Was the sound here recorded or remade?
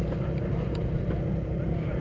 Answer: recorded